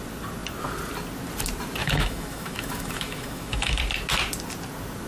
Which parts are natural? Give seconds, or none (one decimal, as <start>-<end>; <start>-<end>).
0.0-1.8; 3.8-5.1

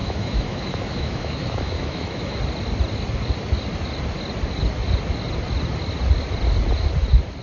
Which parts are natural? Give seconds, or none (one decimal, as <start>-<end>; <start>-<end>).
2.4-7.4

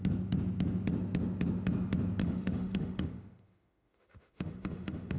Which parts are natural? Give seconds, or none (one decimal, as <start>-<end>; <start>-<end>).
0.0-2.2